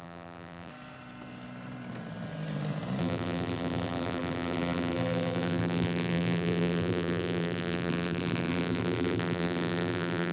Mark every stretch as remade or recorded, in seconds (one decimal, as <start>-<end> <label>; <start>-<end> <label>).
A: 0.0-0.7 remade; 0.7-3.0 recorded; 3.0-10.3 remade

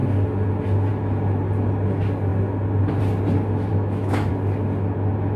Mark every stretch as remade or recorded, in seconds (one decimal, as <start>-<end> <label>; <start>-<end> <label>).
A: 0.0-3.7 recorded; 3.7-4.3 remade; 4.3-5.4 recorded